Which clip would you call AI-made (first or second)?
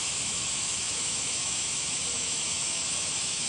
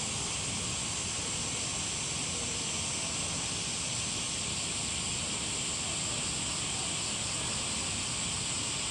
first